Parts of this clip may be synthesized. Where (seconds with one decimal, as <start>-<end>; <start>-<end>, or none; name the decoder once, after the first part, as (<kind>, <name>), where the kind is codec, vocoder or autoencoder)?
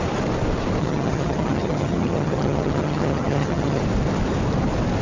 0.8-3.8 (vocoder, HiFi-GAN)